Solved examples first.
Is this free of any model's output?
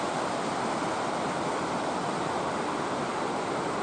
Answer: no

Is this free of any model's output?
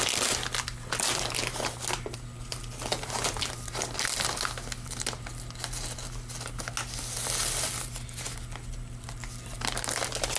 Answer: yes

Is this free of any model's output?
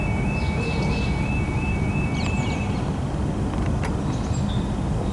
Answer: yes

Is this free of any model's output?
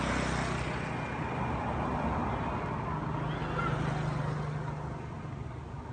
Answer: yes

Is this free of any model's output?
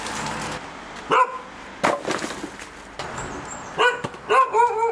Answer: yes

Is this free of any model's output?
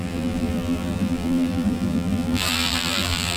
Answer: no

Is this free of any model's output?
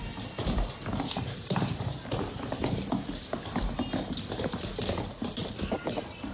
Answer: yes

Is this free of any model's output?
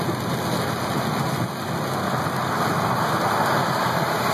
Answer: yes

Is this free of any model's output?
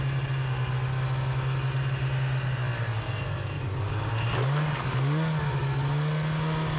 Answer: yes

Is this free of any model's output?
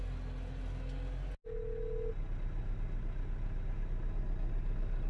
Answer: yes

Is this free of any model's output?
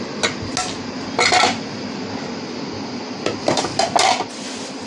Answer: yes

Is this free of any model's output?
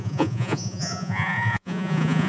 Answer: no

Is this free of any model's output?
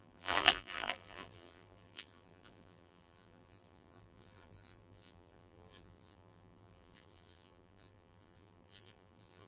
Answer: no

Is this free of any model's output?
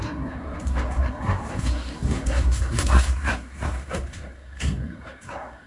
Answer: no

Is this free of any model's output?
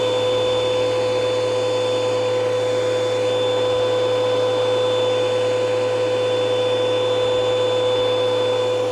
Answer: yes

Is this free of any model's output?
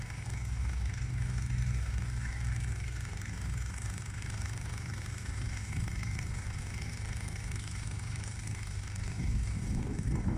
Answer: no